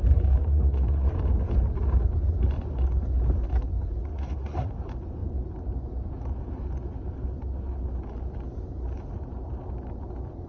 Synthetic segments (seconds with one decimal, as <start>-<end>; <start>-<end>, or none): 0.4-1.1; 4.1-4.7